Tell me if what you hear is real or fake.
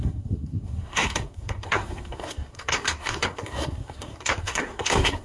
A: fake